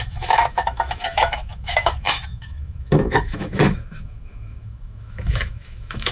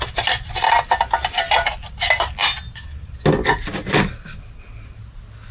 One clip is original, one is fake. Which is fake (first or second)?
first